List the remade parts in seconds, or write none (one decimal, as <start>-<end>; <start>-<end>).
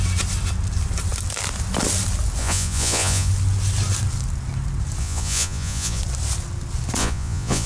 2.4-3.3; 5.0-6.0; 7.0-7.7